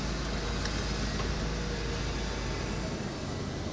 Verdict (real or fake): real